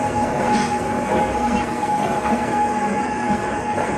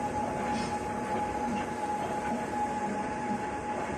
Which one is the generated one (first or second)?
first